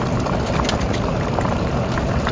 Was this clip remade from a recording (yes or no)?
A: no